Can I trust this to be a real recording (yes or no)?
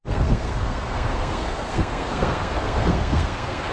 no